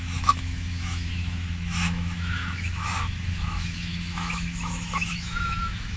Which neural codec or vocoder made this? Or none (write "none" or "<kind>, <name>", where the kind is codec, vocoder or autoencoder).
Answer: autoencoder, DAC-VAE